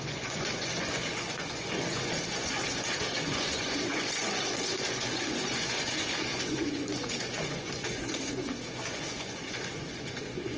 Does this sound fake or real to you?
fake